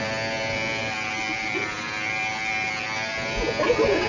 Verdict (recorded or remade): recorded